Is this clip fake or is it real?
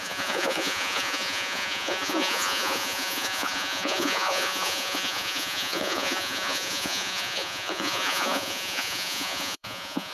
fake